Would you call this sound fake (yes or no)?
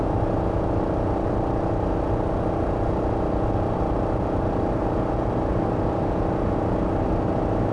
no